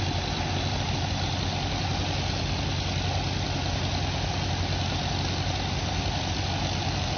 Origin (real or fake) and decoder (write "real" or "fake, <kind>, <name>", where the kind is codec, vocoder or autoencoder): real